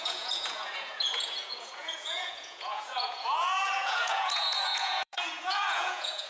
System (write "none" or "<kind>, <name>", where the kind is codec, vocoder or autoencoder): vocoder, Vocos